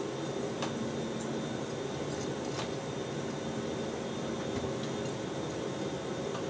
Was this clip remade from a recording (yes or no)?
no